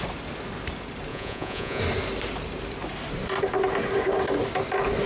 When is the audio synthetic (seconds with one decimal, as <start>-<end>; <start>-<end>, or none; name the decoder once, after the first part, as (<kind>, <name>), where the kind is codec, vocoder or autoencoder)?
1.1-1.8 (vocoder, Vocos)